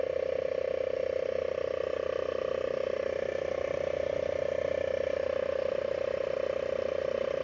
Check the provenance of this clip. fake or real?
real